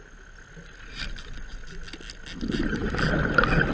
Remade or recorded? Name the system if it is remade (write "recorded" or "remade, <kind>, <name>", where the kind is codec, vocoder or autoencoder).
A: recorded